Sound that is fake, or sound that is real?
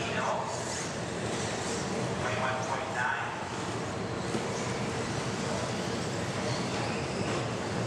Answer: real